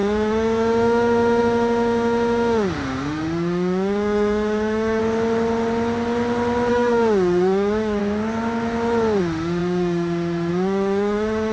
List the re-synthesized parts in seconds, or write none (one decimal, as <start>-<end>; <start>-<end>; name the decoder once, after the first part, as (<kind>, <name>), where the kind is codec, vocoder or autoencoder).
0.0-5.0 (autoencoder, DAC-VAE); 6.7-8.0; 9.2-11.5